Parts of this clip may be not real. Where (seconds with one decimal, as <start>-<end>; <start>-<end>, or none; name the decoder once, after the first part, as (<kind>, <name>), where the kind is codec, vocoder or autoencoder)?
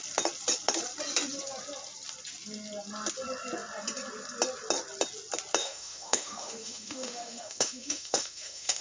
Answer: 5.6-8.8 (autoencoder, DAC-VAE)